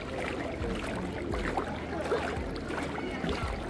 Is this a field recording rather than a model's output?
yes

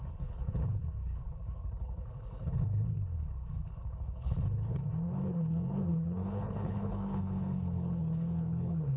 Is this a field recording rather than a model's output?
no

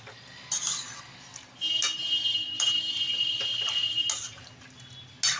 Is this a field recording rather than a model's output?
yes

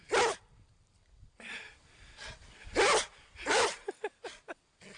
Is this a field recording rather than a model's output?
no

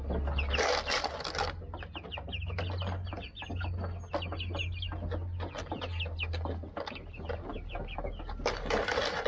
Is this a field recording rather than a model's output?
yes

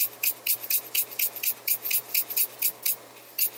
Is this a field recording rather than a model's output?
yes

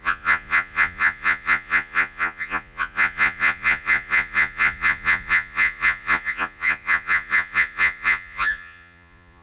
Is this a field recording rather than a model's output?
no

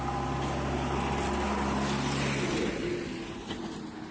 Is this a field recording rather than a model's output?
yes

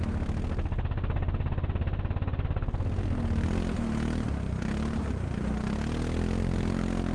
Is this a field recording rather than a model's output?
yes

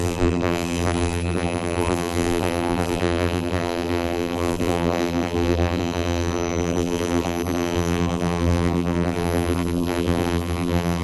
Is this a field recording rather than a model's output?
no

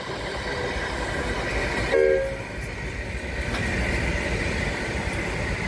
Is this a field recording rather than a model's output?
yes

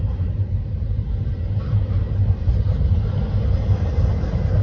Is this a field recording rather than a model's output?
yes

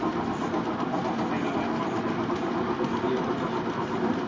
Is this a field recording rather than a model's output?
yes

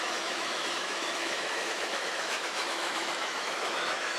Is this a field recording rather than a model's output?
no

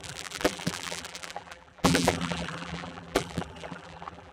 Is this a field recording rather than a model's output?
no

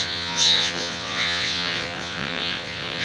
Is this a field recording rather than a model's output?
no